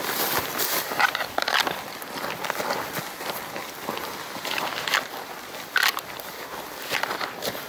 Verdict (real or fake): real